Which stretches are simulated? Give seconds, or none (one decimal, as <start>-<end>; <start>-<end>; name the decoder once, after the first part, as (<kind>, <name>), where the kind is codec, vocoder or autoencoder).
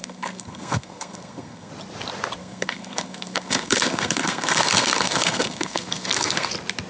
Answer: 0.0-1.7 (codec, SNAC); 2.4-6.5